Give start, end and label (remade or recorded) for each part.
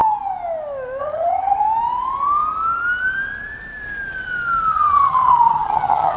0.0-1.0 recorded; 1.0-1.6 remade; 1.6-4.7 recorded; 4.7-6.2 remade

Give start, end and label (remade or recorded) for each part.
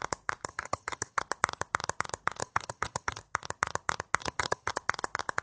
0.0-0.5 recorded; 0.5-1.2 remade; 1.2-2.4 recorded; 2.4-3.2 remade; 3.2-4.2 recorded; 4.2-4.7 remade; 4.7-5.4 recorded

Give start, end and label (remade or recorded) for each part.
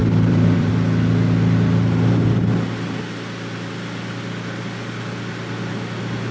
0.0-0.7 remade; 0.7-6.3 recorded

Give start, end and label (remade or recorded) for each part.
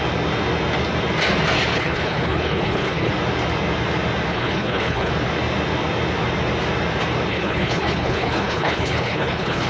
0.0-1.7 recorded; 1.7-3.1 remade; 3.1-4.3 recorded; 4.3-5.1 remade; 5.1-7.3 recorded; 7.3-9.7 remade